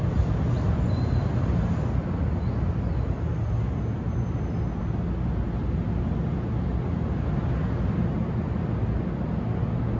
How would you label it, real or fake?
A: real